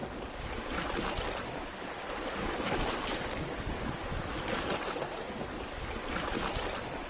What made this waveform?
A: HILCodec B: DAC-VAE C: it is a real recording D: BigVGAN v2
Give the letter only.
C